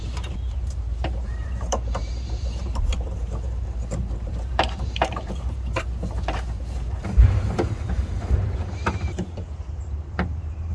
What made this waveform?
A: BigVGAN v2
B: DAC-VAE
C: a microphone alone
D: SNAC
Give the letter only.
A